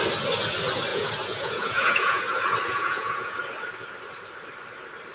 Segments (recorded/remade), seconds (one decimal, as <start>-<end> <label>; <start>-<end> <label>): 0.0-0.9 recorded; 0.9-2.2 remade; 2.2-2.7 recorded; 2.7-3.4 remade; 3.4-5.1 recorded

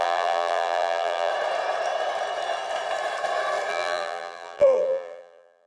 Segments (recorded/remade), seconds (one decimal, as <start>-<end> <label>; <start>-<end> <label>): 0.0-1.3 remade; 1.3-3.7 recorded; 3.7-5.7 remade